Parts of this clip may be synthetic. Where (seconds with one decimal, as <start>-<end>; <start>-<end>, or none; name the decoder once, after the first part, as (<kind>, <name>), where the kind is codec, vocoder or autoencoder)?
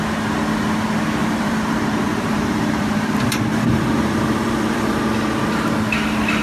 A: 1.2-5.0 (vocoder, BigVGAN v2)